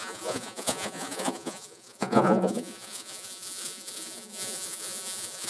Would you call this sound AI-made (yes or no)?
yes